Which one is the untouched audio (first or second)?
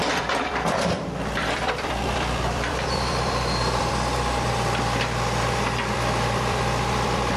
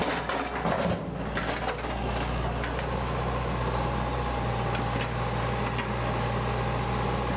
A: second